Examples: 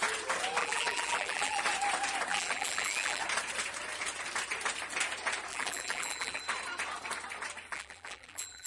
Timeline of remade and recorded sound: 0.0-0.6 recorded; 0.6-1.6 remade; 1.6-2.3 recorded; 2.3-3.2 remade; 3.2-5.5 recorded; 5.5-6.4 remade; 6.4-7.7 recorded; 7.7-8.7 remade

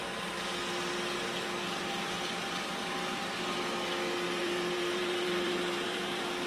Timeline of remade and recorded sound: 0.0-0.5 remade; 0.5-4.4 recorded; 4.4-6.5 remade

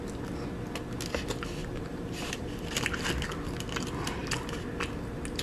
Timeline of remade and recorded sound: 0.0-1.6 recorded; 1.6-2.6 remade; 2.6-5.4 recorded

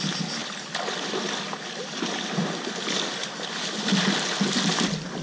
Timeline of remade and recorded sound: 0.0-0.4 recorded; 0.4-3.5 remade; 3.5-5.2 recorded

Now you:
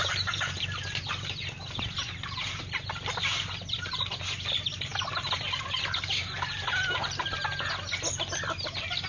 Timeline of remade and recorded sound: 0.0-0.6 remade; 0.6-4.9 recorded; 4.9-7.7 remade; 7.7-9.1 recorded

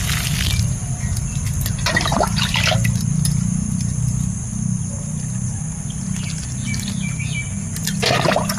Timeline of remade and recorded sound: 0.0-8.6 recorded

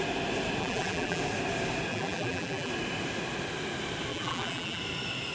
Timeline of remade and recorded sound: 0.0-0.6 recorded; 0.6-1.2 remade; 1.2-1.9 recorded; 1.9-2.7 remade; 2.7-4.1 recorded; 4.1-4.8 remade; 4.8-5.3 recorded

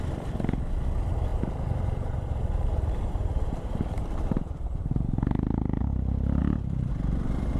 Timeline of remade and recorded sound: 0.0-1.3 recorded; 1.3-5.8 remade; 5.8-6.4 recorded; 6.4-6.9 remade; 6.9-7.6 recorded